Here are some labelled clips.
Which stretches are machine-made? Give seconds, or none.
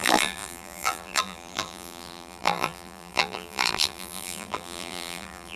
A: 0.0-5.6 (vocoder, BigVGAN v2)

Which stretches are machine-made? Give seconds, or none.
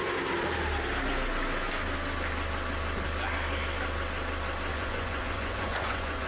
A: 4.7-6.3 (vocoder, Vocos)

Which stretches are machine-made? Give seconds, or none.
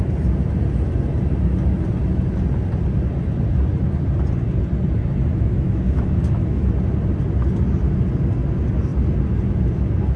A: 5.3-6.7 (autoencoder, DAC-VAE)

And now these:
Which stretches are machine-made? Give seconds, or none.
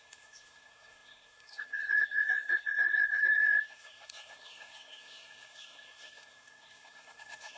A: 0.0-7.6 (codec, SNAC)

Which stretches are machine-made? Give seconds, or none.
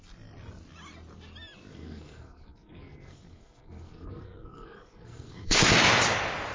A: 1.7-5.6 (codec, SNAC)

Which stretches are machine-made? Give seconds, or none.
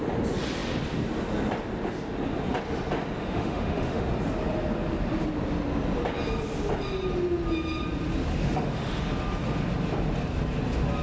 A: 3.2-4.1 (autoencoder, DAC-VAE); 8.4-9.0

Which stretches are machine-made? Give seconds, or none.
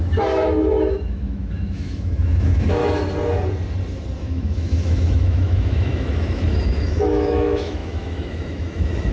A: 0.0-2.8 (autoencoder, DAC-VAE); 4.2-9.1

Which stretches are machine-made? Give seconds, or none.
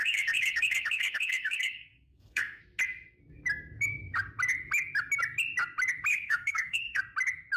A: 0.0-2.6 (codec, SNAC); 6.1-7.0